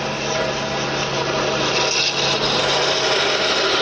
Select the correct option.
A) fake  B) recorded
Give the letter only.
B